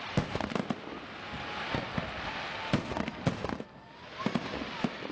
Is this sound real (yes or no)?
yes